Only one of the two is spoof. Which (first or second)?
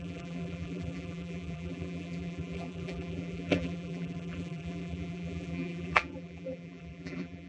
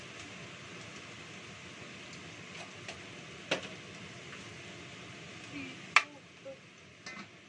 first